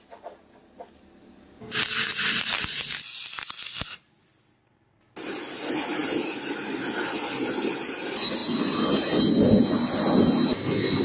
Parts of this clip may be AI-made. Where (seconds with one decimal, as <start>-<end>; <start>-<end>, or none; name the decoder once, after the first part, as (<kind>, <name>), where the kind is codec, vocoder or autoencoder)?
none